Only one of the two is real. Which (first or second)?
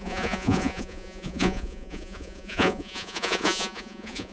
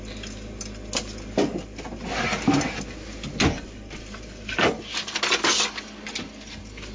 second